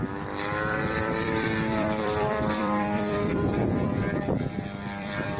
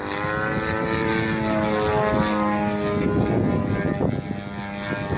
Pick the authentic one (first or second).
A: second